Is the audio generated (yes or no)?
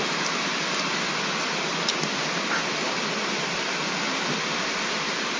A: yes